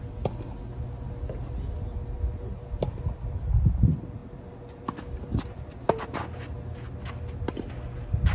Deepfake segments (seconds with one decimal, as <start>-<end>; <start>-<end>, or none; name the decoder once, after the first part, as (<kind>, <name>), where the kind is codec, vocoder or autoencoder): none